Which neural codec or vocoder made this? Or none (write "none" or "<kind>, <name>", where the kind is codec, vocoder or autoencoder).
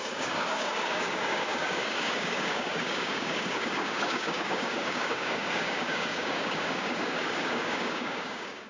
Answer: codec, DAC